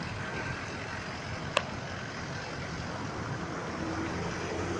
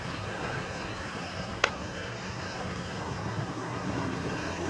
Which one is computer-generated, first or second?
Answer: second